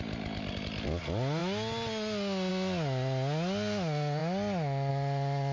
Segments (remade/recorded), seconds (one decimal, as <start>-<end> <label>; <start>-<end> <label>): 0.0-5.5 recorded